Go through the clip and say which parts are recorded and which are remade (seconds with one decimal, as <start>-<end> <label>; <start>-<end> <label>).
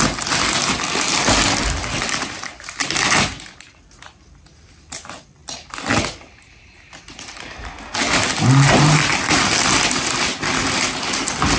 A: 0.0-11.6 recorded